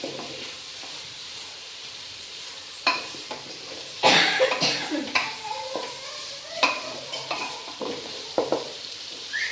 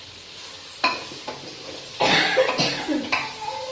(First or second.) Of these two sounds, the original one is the second